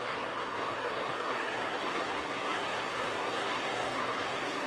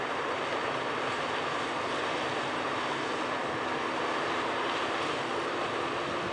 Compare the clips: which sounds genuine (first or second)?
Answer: second